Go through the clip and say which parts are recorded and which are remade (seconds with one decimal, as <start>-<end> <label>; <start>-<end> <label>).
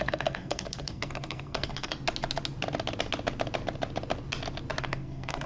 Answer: 0.0-1.9 remade; 1.9-4.8 recorded; 4.8-5.5 remade